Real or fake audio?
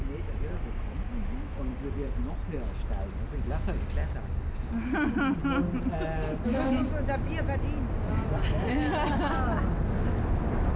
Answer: real